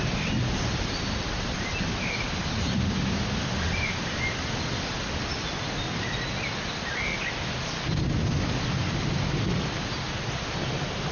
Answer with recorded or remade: recorded